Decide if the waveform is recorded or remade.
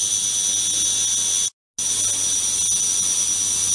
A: recorded